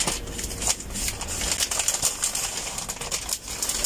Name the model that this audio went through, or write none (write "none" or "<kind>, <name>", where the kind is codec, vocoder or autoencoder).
none